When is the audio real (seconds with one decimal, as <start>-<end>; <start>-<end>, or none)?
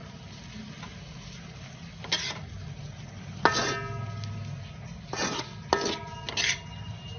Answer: 0.0-7.2